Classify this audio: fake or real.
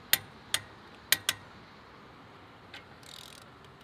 real